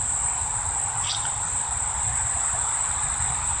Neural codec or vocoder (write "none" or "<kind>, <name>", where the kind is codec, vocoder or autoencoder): none